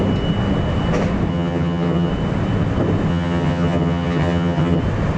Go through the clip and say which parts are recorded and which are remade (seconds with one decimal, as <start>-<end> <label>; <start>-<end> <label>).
0.0-1.3 recorded; 1.3-2.1 remade; 2.1-3.1 recorded; 3.1-4.8 remade; 4.8-5.2 recorded